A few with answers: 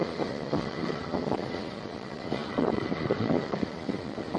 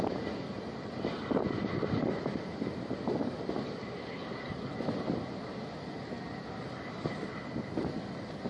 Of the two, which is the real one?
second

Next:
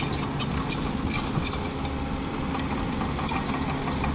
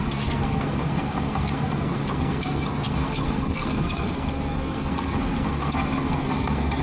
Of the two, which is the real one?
first